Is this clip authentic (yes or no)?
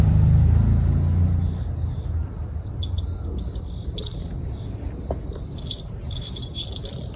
yes